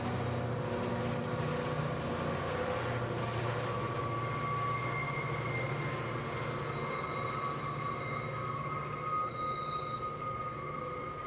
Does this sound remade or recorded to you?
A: recorded